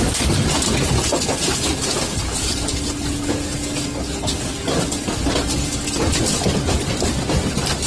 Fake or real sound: real